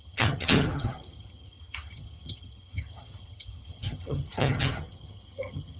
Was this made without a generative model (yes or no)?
no